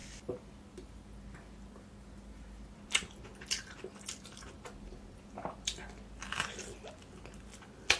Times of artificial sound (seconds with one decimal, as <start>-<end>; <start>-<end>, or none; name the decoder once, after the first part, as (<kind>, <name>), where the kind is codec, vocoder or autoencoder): none